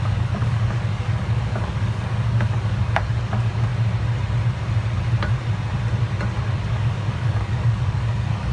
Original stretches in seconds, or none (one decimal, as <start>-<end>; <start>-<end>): 3.7-6.7